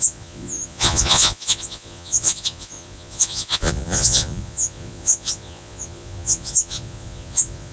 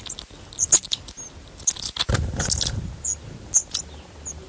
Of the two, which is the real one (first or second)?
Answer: second